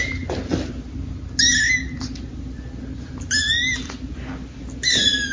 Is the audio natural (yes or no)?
yes